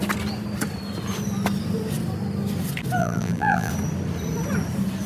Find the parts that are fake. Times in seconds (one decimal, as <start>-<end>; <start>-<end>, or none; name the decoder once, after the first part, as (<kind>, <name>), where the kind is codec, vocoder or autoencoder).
3.0-3.7 (vocoder, BigVGAN v2)